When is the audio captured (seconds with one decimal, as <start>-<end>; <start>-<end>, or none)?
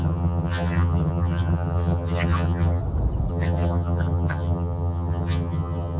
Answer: 2.8-3.3